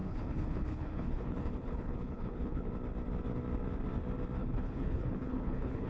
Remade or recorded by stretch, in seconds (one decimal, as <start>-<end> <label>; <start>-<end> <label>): 0.0-2.7 remade; 2.7-4.4 recorded; 4.4-5.9 remade